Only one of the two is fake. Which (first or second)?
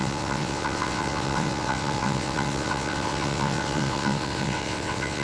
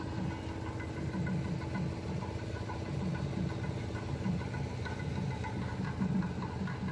first